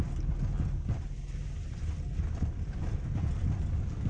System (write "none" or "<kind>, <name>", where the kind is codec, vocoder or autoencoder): none